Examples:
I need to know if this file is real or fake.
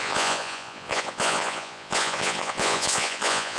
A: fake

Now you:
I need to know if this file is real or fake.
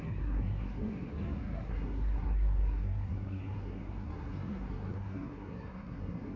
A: fake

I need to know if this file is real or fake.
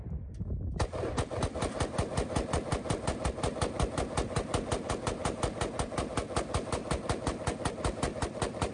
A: real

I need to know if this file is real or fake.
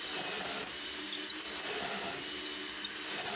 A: real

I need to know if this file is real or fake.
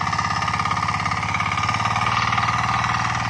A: real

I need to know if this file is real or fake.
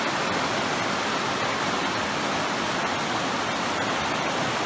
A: real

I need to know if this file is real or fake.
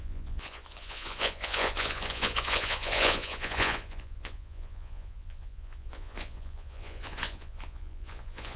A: fake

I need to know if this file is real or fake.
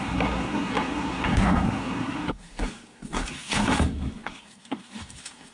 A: fake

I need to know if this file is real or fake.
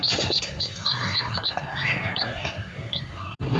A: fake